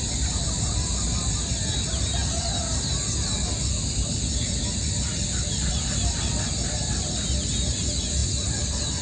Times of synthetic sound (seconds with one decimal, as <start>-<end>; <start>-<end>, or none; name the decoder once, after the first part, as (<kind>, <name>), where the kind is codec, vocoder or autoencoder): none